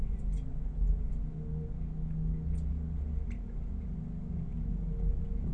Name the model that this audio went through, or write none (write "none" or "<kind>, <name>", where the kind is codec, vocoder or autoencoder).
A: none